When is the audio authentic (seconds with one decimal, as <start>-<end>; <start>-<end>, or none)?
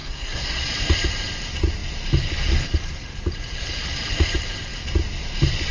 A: 0.6-5.7